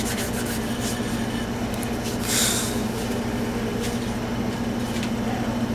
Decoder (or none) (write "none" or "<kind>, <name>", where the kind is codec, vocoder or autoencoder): none